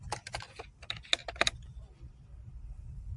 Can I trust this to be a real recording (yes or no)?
yes